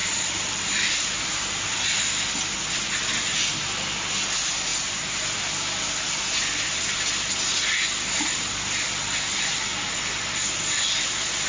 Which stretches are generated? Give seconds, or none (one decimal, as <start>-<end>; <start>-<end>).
0.0-2.0; 4.7-5.4

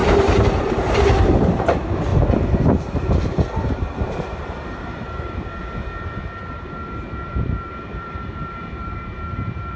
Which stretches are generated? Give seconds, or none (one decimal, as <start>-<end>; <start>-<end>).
0.0-2.1; 2.7-5.6; 6.4-9.8

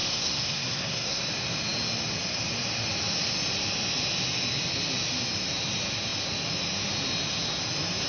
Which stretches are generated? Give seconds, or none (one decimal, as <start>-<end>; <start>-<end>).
0.0-1.2